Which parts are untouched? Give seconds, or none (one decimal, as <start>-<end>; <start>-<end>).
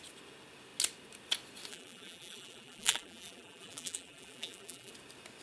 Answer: 0.0-1.7; 4.9-5.4